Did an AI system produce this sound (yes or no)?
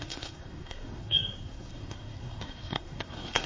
yes